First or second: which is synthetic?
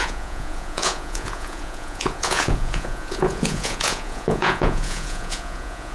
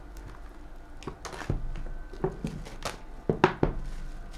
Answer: first